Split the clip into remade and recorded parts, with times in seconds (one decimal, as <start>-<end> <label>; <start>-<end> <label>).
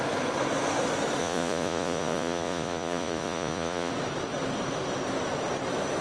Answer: 0.0-1.2 recorded; 1.2-3.9 remade; 3.9-6.0 recorded